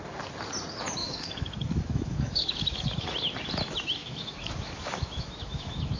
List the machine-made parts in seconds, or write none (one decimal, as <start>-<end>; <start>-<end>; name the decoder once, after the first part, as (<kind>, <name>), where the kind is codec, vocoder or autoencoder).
1.0-3.1 (autoencoder, DAC-VAE); 4.0-6.0